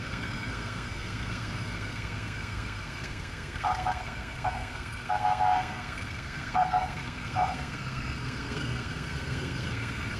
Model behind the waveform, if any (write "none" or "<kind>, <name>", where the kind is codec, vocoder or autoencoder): codec, SNAC